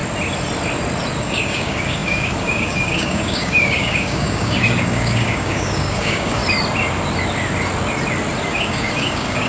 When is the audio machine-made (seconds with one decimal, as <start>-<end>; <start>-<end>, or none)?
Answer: 1.2-6.4; 8.5-9.5